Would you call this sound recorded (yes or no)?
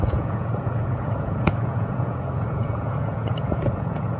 no